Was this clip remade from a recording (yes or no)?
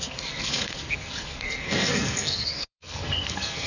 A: yes